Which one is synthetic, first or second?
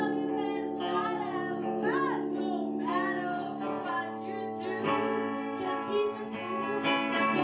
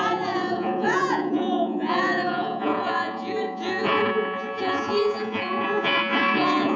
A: second